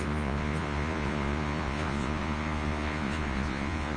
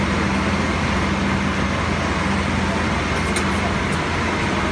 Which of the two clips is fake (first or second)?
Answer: first